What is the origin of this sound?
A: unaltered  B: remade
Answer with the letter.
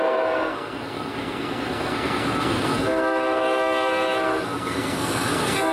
B